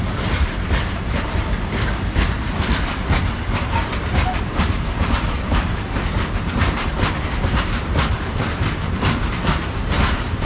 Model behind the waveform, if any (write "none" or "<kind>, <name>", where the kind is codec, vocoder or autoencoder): vocoder, BigVGAN v2